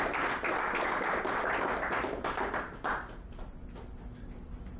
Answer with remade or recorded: recorded